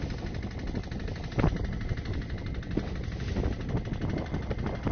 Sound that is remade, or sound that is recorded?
recorded